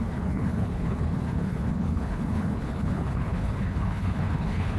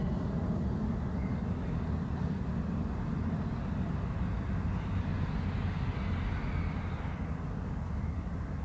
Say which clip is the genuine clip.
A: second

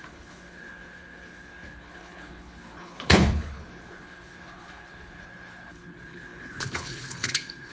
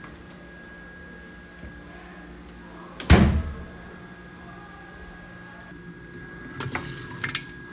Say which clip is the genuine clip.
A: second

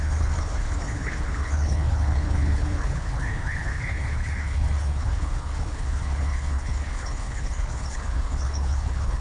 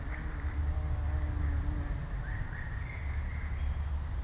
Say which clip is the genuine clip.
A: second